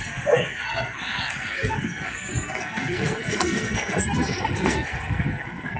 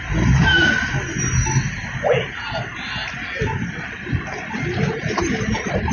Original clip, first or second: second